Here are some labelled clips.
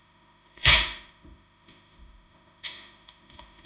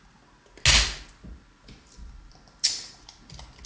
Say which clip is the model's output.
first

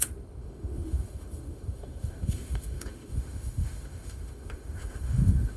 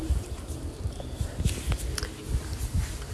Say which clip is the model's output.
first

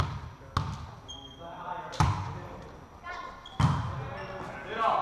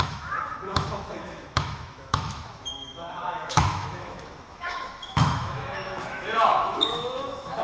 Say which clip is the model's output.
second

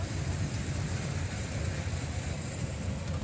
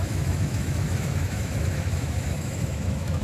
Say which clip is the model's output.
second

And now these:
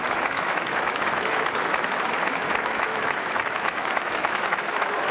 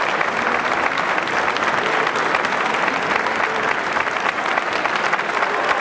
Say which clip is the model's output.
first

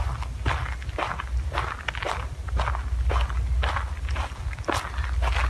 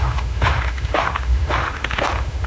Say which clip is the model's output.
second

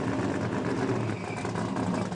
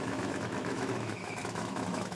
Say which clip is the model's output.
second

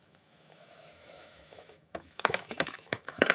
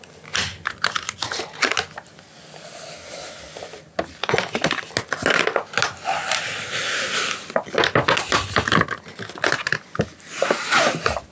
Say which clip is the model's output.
first